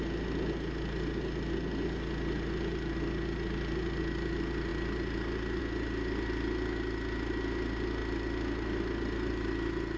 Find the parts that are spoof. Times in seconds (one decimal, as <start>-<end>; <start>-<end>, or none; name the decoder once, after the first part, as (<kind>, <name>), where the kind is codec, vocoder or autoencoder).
none